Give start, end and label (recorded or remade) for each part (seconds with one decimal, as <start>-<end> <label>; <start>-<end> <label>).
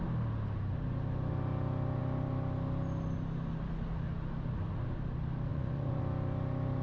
0.0-5.5 recorded; 5.5-6.0 remade; 6.0-6.8 recorded